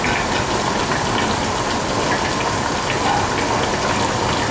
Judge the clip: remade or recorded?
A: recorded